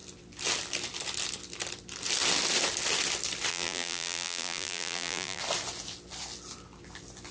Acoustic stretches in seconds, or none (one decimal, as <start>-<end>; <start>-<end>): 0.0-3.5; 5.4-7.3